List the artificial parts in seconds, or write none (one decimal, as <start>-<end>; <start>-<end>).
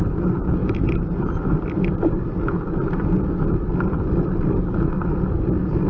none